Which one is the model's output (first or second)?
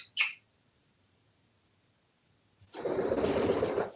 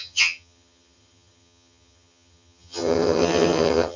second